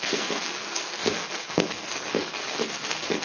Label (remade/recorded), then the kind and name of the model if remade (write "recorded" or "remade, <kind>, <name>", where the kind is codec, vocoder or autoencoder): remade, codec, SNAC